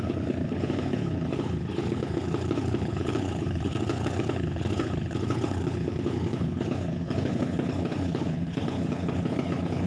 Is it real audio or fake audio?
fake